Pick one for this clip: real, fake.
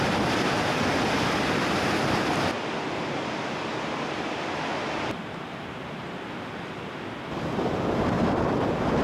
real